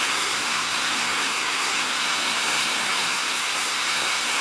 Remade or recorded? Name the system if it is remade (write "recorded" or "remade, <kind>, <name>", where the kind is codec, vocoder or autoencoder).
remade, codec, SNAC